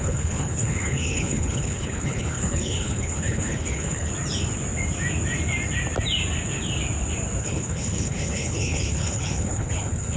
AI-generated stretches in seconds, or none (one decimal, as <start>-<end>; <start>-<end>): 0.0-4.1; 7.4-10.2